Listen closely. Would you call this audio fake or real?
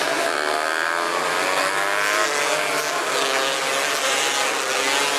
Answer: real